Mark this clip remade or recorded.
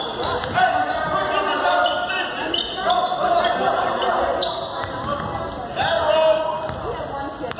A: recorded